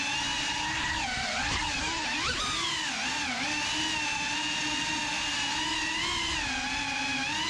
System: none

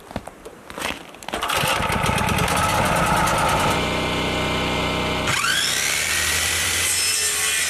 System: vocoder, BigVGAN v2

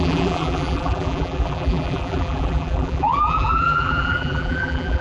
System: vocoder, BigVGAN v2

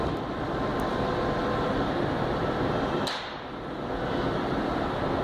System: vocoder, BigVGAN v2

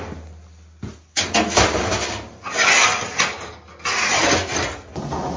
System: none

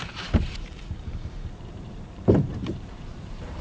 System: vocoder, BigVGAN v2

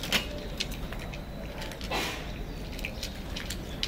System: none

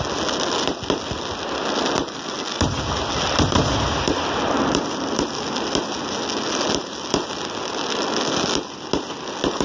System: none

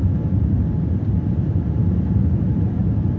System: vocoder, BigVGAN v2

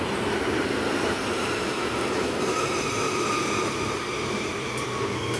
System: vocoder, BigVGAN v2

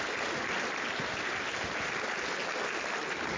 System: none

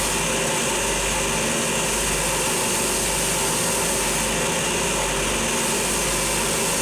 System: none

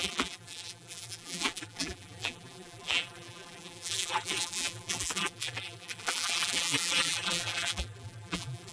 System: vocoder, BigVGAN v2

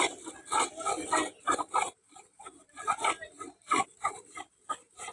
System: vocoder, BigVGAN v2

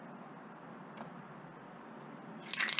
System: none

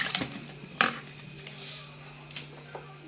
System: none